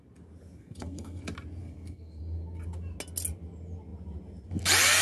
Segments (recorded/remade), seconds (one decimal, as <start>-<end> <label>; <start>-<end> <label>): 0.0-0.6 recorded; 0.6-1.2 remade; 1.2-1.6 recorded; 1.6-2.2 remade; 2.2-5.0 recorded